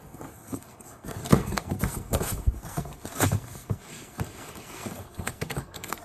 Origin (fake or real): fake